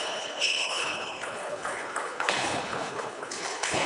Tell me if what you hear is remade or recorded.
remade